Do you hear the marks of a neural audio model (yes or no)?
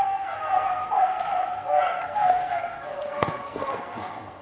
yes